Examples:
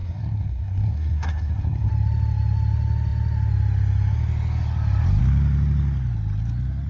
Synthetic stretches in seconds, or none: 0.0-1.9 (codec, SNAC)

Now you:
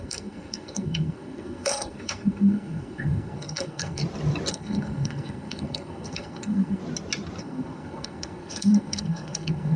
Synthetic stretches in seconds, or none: 0.0-4.0 (codec, SNAC); 4.5-6.8; 7.4-9.8

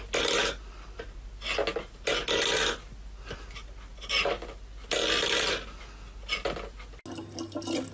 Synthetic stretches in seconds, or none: none

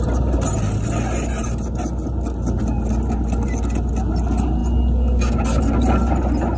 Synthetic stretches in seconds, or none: none

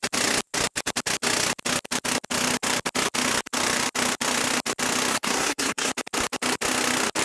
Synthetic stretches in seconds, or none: 5.1-5.9 (codec, SNAC)